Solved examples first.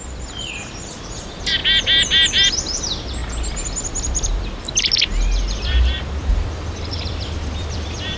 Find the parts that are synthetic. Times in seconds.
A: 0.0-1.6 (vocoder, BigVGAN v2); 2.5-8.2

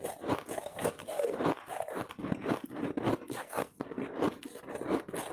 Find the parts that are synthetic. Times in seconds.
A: 0.6-1.4 (codec, SNAC); 3.3-4.0

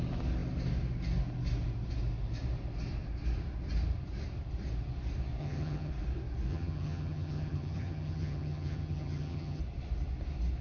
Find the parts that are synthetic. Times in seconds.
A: 5.4-5.9 (vocoder, HiFi-GAN); 6.5-9.6

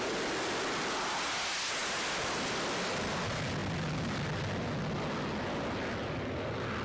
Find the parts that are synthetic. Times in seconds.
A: none

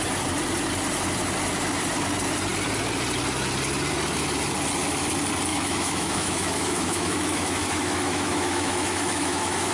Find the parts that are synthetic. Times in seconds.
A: 5.5-9.7 (autoencoder, DAC-VAE)

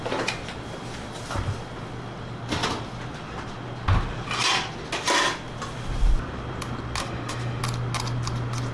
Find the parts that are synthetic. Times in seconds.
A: 7.0-7.6 (autoencoder, DAC-VAE)